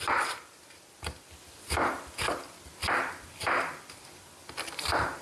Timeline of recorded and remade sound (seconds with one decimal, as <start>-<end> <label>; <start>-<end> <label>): 0.0-5.2 remade